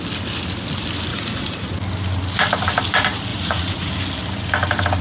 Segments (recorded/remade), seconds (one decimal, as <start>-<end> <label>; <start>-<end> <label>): 0.0-1.1 recorded; 1.1-1.7 remade; 1.7-3.3 recorded; 3.3-3.9 remade; 3.9-5.0 recorded